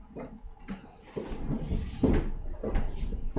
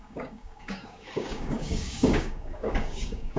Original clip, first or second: first